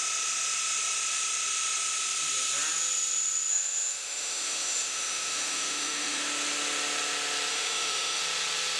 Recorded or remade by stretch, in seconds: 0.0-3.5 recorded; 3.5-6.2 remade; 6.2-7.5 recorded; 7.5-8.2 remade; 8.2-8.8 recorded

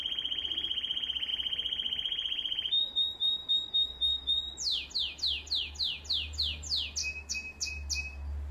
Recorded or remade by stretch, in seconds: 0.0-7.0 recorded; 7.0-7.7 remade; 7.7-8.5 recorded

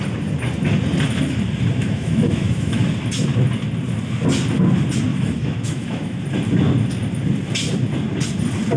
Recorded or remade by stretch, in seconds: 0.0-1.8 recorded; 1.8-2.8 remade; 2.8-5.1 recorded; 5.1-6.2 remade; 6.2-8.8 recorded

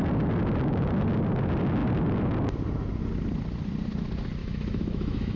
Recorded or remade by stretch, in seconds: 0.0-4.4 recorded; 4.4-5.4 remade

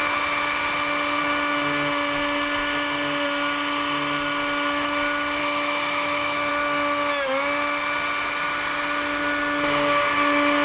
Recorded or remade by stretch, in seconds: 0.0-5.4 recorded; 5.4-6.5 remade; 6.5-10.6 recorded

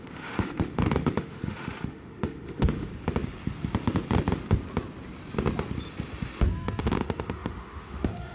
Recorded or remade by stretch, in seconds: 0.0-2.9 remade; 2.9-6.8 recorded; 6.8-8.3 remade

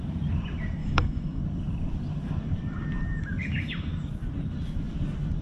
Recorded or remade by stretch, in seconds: 0.0-0.8 recorded; 0.8-1.4 remade; 1.4-3.4 recorded; 3.4-3.9 remade; 3.9-5.4 recorded

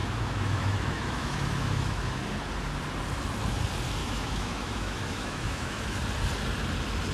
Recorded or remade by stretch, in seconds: 0.0-2.2 remade; 2.2-4.0 recorded; 4.0-6.0 remade; 6.0-7.1 recorded